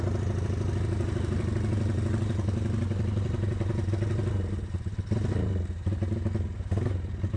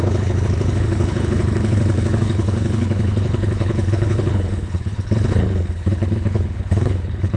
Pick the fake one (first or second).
second